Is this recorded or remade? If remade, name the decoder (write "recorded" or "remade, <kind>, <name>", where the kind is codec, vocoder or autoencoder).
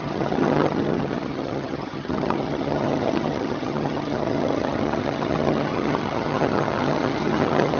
remade, vocoder, HiFi-GAN